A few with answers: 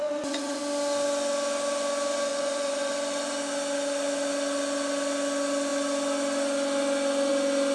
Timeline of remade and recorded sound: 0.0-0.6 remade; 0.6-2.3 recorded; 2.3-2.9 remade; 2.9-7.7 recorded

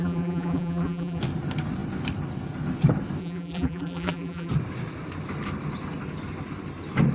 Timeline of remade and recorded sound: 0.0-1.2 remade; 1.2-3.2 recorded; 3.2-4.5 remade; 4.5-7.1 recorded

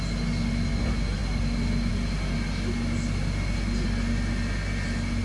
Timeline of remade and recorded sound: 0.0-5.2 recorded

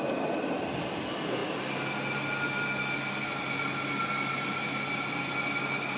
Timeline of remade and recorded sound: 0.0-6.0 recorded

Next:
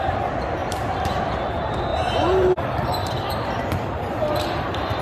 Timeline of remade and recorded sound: 0.0-0.6 recorded; 0.6-1.4 remade; 1.4-1.9 recorded; 1.9-5.0 remade

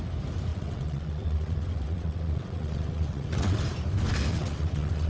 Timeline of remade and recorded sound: 0.0-0.5 recorded; 0.5-3.6 remade; 3.6-4.3 recorded; 4.3-5.1 remade